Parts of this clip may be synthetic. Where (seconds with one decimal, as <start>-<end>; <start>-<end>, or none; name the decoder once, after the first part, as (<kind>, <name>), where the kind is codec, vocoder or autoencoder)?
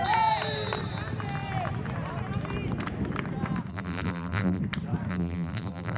3.7-4.6 (vocoder, BigVGAN v2); 5.1-6.0